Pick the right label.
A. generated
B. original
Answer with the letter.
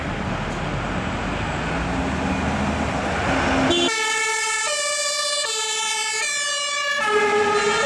B